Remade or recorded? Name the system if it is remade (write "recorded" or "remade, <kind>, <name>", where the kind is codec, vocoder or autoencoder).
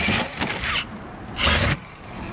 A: remade, vocoder, BigVGAN v2